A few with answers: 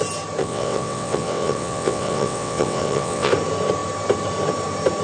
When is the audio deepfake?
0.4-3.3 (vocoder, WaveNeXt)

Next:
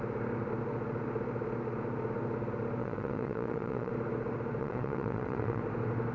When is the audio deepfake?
2.8-3.9 (vocoder, WaveNeXt); 4.6-5.6

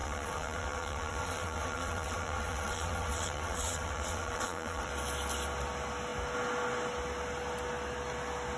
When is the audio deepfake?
0.0-4.9 (vocoder, WaveNeXt)

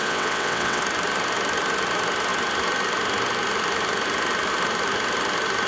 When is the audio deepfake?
0.0-0.8 (vocoder, WaveNeXt)